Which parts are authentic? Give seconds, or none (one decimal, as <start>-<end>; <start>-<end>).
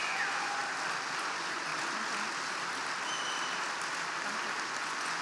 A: 0.6-1.2; 1.7-4.8